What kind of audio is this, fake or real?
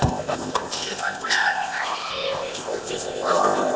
fake